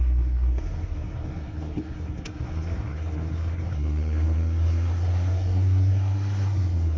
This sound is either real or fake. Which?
fake